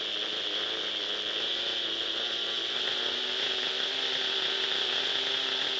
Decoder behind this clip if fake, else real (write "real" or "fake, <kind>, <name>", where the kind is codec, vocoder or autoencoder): real